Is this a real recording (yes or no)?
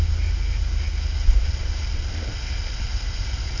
yes